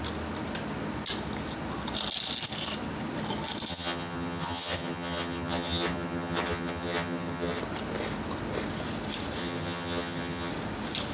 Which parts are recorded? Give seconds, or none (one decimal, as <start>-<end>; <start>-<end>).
0.0-3.7; 7.6-9.4; 10.5-11.1